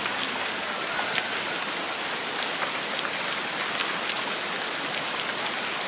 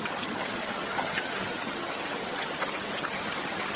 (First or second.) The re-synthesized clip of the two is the second